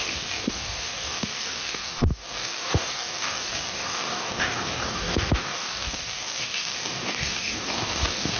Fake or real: fake